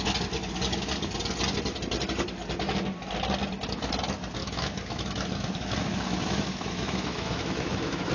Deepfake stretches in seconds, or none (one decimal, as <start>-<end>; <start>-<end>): 4.4-8.1